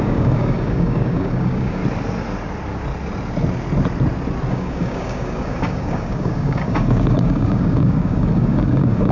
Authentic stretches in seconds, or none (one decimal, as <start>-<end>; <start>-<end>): 1.8-4.5